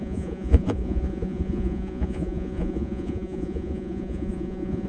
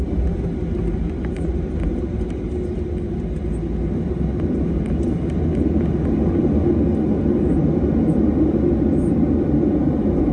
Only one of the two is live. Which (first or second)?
second